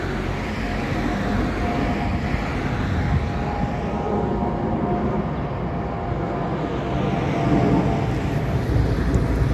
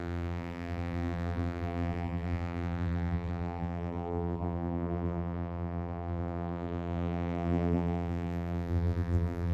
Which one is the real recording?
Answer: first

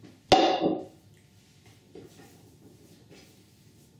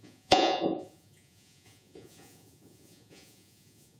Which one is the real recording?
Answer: first